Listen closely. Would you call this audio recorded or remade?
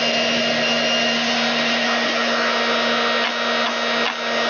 recorded